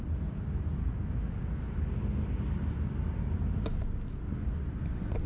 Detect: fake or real real